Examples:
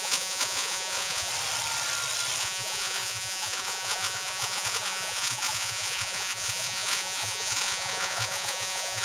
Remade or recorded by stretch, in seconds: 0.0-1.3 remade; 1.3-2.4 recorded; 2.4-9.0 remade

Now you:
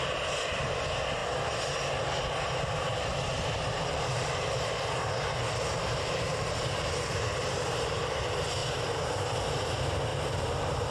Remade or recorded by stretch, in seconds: 0.0-2.9 recorded; 2.9-8.2 remade; 8.2-8.6 recorded; 8.6-9.2 remade; 9.2-10.1 recorded; 10.1-10.9 remade

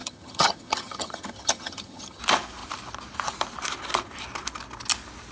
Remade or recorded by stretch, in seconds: 0.0-2.2 remade; 2.2-5.3 recorded

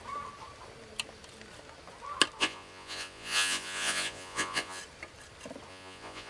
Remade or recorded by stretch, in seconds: 0.0-2.4 recorded; 2.4-4.8 remade; 4.8-5.7 recorded; 5.7-6.3 remade

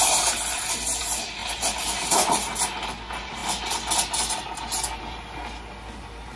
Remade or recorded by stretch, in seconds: 0.0-6.4 recorded

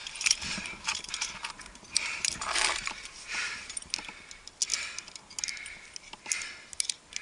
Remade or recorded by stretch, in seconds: 0.0-3.9 remade; 3.9-7.2 recorded